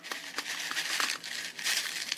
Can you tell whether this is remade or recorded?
recorded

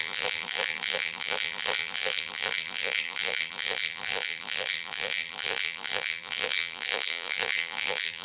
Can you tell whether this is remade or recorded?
remade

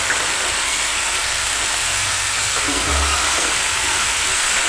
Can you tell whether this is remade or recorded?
remade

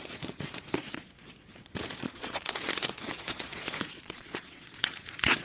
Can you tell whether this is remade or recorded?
remade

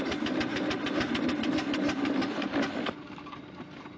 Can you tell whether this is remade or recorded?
recorded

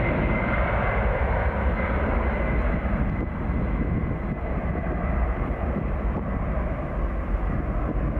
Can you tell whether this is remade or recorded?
recorded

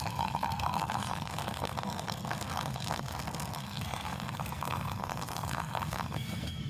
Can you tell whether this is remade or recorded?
remade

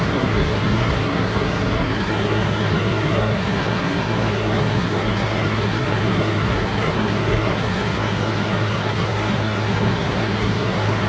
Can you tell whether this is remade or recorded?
remade